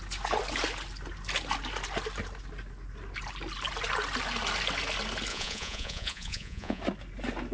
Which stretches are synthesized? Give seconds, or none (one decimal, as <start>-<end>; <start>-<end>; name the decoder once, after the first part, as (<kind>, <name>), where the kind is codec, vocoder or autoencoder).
5.3-6.8 (vocoder, Vocos)